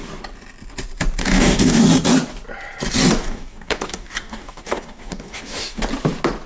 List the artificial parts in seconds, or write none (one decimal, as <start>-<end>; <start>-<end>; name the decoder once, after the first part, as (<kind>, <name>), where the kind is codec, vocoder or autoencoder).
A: 1.2-1.8 (codec, DAC); 3.2-5.8

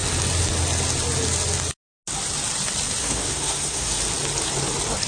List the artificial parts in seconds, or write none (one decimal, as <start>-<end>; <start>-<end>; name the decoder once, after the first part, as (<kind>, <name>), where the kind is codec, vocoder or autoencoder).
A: 3.0-4.0 (codec, SNAC)

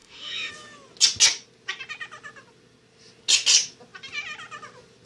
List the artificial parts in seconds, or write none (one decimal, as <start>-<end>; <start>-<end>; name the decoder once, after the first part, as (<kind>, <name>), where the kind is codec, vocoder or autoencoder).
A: 0.0-0.5 (autoencoder, DAC-VAE)

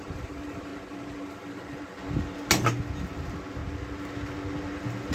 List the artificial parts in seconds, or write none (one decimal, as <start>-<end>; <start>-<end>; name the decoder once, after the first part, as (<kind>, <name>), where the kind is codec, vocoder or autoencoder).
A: 0.0-0.7 (vocoder, BigVGAN v2); 2.9-3.6

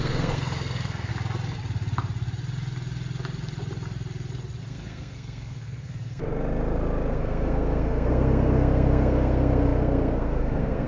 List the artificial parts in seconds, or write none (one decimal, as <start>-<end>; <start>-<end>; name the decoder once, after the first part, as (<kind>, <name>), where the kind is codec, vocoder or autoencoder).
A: 0.0-1.1 (codec, SNAC); 4.6-6.2; 7.1-10.9